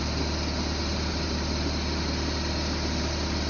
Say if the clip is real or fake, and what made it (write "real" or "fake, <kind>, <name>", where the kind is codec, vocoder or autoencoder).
real